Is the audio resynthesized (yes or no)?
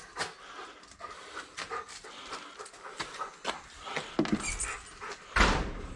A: no